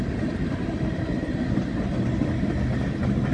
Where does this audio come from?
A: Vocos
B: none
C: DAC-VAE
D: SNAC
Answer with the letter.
B